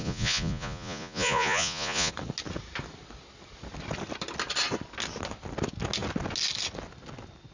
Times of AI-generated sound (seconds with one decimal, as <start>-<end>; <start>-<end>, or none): 0.0-2.1